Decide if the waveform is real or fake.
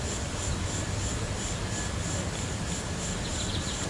real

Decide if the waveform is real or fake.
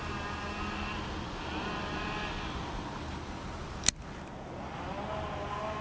real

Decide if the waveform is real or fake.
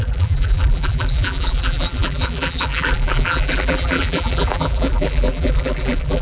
fake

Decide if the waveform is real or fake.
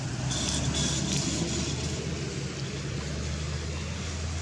real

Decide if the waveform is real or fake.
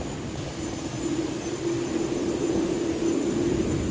real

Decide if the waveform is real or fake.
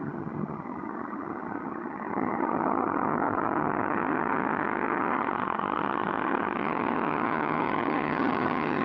fake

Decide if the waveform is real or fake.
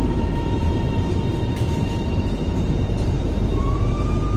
fake